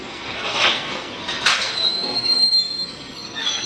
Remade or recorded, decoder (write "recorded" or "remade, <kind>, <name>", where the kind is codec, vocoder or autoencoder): remade, codec, SNAC